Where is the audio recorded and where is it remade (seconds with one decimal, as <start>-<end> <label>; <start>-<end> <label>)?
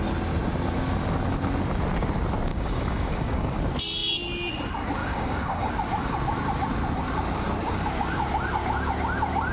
0.0-2.5 recorded; 2.5-3.6 remade; 3.6-5.0 recorded; 5.0-5.7 remade; 5.7-9.5 recorded